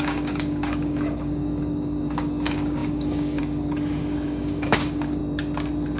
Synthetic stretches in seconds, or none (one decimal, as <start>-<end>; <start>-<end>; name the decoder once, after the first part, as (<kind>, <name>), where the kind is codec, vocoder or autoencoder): 0.0-5.2 (codec, DAC)